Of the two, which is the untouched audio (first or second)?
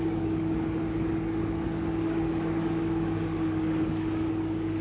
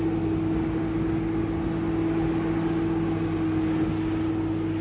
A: second